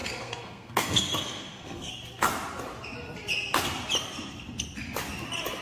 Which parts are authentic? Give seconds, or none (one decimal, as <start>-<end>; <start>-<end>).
1.9-5.6